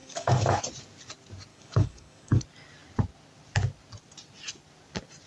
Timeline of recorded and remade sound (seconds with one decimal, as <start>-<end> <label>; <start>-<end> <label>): 0.0-0.6 remade; 0.6-1.5 recorded; 1.5-2.4 remade; 2.4-5.3 recorded